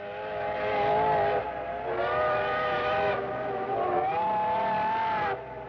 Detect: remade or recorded recorded